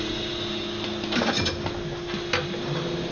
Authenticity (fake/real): real